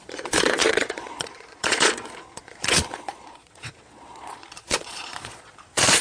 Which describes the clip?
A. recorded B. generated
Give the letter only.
B